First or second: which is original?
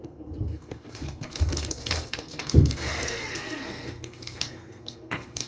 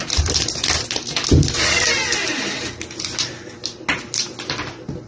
second